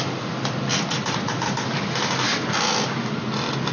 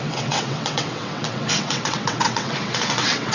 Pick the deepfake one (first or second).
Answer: second